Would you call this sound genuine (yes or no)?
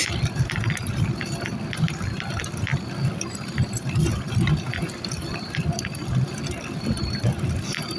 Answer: yes